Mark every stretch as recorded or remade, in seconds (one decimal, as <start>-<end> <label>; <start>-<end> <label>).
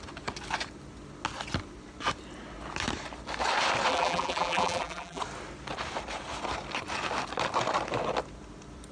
0.0-3.9 recorded; 3.9-5.2 remade; 5.2-8.9 recorded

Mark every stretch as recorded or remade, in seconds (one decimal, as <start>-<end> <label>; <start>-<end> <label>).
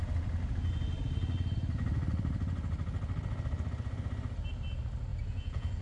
0.0-5.1 recorded; 5.1-5.8 remade